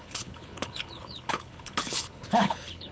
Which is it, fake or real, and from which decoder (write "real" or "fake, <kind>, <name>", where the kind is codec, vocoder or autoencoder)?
fake, codec, HILCodec